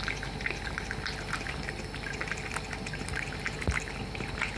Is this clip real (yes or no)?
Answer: yes